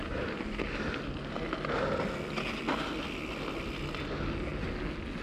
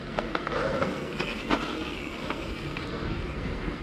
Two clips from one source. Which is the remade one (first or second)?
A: second